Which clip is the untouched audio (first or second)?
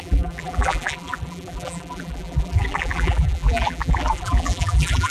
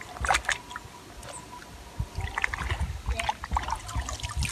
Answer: second